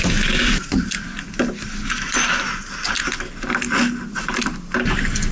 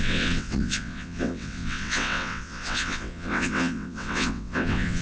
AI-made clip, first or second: second